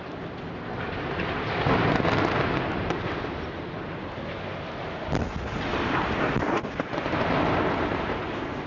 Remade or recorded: recorded